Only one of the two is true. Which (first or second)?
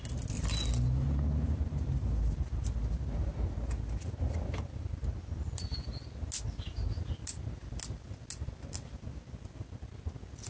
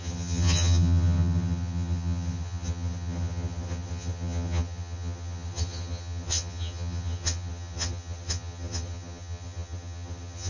first